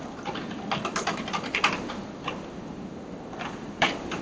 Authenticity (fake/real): fake